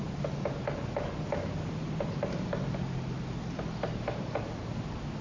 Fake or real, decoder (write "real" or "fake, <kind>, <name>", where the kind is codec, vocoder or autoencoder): real